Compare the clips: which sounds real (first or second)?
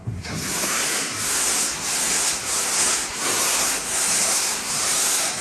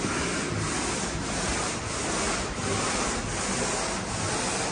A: second